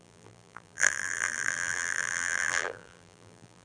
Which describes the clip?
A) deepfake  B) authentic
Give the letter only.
A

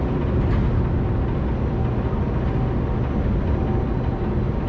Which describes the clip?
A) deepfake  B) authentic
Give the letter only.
B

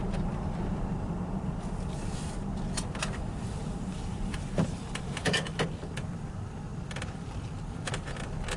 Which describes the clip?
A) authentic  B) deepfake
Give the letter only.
B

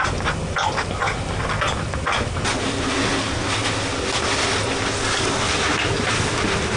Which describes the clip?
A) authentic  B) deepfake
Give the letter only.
A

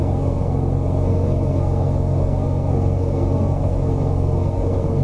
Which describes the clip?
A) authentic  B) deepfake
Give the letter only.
B